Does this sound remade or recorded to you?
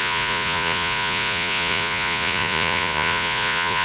remade